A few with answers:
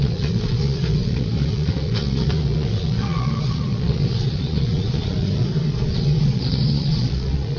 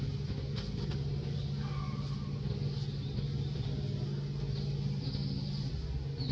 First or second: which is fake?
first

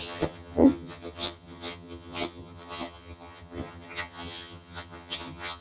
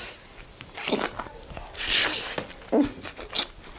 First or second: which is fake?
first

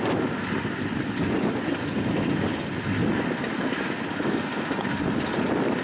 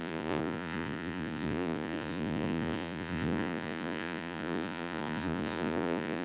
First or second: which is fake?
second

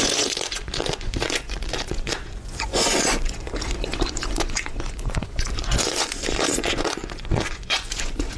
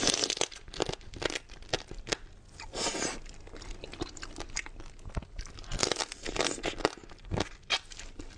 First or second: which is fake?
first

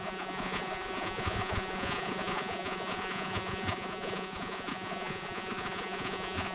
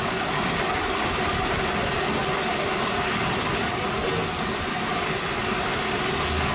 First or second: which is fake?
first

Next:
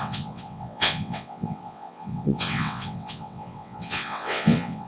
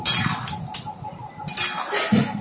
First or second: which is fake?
first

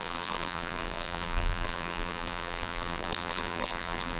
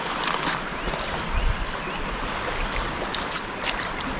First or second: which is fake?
first